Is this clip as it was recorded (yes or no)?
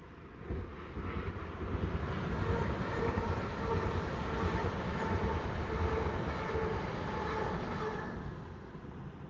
yes